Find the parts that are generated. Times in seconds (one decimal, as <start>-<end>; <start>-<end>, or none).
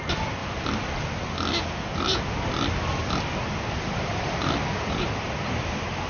none